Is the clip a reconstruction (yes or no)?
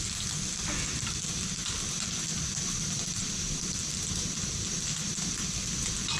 no